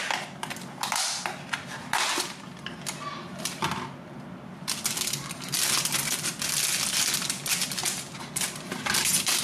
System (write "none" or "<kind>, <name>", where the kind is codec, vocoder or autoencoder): none